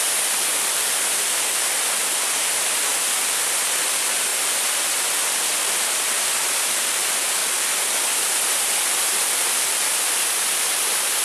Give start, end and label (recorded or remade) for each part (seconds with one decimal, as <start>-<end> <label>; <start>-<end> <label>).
0.0-2.9 remade; 2.9-3.4 recorded; 3.4-4.3 remade; 4.3-5.2 recorded; 5.2-7.4 remade; 7.4-11.2 recorded